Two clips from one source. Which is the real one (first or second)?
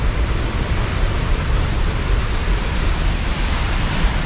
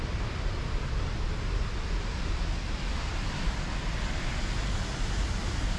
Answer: second